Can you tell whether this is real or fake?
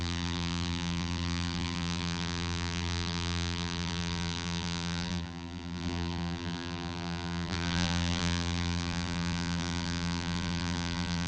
fake